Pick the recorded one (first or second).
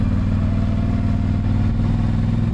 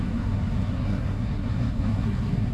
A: first